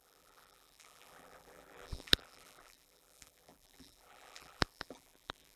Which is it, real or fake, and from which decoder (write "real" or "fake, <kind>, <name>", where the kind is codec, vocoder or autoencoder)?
fake, vocoder, BigVGAN v2